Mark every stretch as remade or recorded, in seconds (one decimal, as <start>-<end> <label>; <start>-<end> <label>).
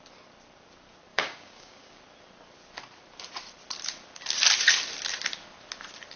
0.0-1.1 recorded; 1.1-2.0 remade; 2.0-6.2 recorded